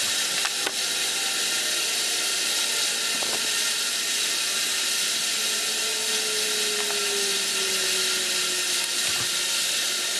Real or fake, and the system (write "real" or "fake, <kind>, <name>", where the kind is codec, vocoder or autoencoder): real